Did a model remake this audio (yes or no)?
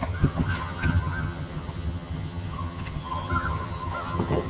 yes